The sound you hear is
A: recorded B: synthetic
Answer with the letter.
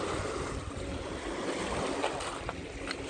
A